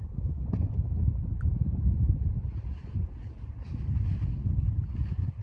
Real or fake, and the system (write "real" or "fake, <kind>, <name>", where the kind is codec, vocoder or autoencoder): real